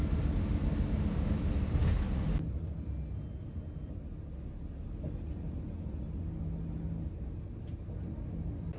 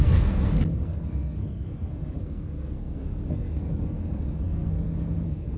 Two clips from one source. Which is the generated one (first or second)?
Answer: second